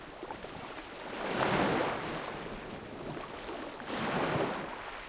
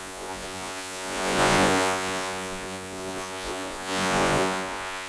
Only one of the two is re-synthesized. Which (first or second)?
second